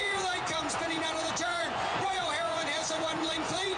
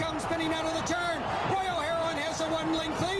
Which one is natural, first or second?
second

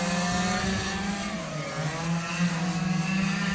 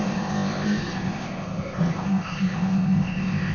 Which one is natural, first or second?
first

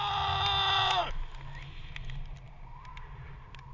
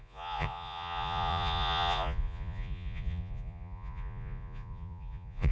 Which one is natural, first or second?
first